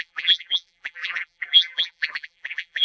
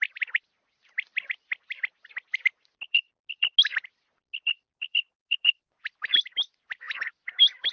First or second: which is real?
second